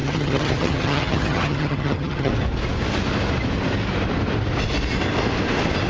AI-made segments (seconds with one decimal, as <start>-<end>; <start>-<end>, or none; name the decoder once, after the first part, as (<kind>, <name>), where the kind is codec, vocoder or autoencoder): 0.0-2.3 (vocoder, HiFi-GAN)